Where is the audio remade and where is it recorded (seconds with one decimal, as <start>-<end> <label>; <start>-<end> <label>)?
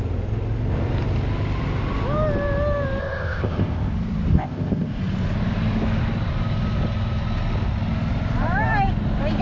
0.0-3.0 recorded; 3.0-3.9 remade; 3.9-4.3 recorded; 4.3-5.0 remade; 5.0-9.4 recorded